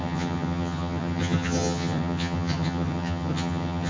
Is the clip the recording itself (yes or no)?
no